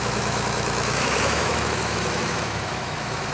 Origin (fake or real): fake